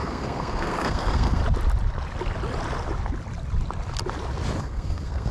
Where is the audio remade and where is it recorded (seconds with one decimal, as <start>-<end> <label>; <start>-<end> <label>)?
0.0-1.4 remade; 1.4-4.6 recorded; 4.6-5.3 remade